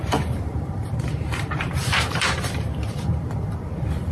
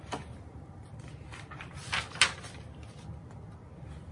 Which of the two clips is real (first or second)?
second